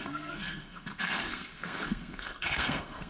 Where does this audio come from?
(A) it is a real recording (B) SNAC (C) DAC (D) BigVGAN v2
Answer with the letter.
B